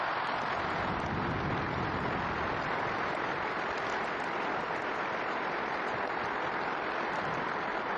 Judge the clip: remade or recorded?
recorded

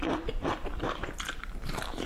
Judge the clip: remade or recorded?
remade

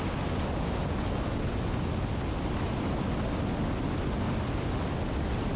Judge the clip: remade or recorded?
recorded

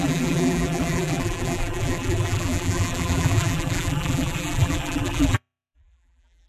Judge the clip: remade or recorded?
remade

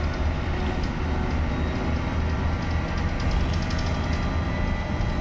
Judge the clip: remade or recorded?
recorded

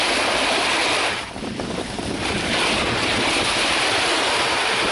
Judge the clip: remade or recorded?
recorded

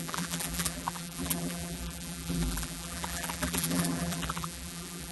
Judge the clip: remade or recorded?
remade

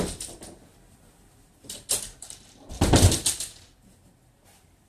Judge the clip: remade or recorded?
recorded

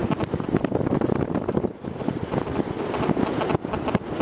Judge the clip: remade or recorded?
recorded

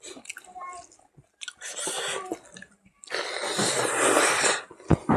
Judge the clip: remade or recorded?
recorded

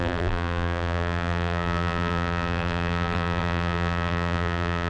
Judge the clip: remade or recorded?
remade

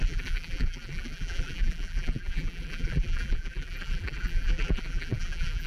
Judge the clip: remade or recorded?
remade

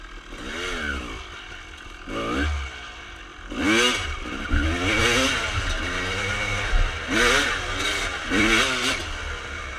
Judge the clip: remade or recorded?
recorded